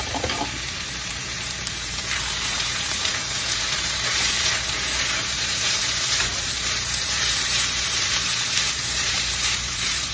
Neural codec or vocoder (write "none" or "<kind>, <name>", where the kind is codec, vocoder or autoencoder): vocoder, BigVGAN v2